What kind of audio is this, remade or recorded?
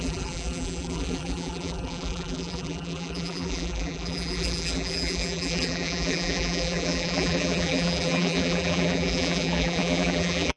remade